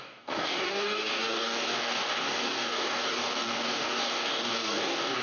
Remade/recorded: remade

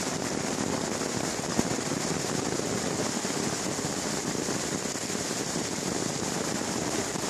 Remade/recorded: recorded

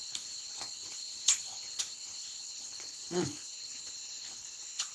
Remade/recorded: remade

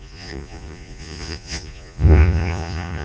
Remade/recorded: remade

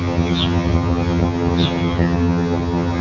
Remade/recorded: remade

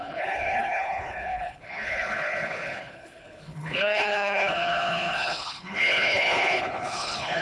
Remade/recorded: remade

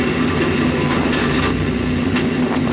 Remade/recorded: recorded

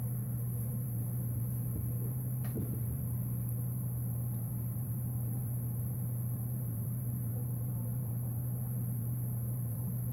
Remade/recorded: remade